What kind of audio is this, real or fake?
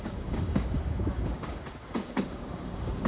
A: fake